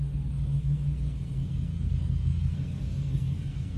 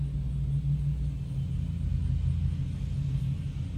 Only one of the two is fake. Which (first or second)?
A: first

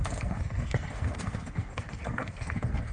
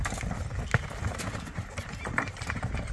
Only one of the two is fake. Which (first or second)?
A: first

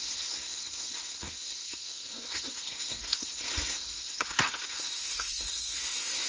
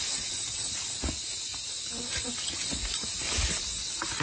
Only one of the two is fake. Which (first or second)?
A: first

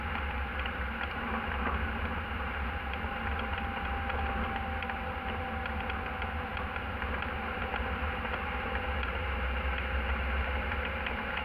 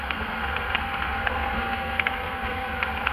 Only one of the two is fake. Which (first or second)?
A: second